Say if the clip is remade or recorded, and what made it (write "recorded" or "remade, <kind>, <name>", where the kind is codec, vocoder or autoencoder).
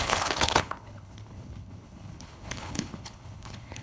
remade, codec, HILCodec